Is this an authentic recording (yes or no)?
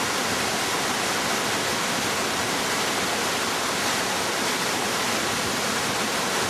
yes